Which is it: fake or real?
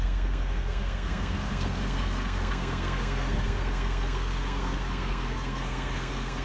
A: fake